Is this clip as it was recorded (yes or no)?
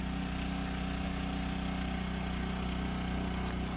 yes